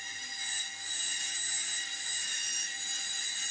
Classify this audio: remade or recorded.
recorded